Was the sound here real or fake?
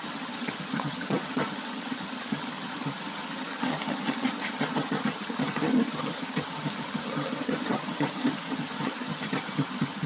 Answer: fake